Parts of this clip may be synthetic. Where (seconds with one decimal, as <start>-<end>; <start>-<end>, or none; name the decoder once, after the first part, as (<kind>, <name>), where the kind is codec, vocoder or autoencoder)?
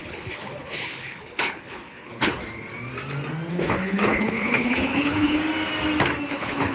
0.0-2.4 (codec, HILCodec); 3.5-5.4; 6.3-6.7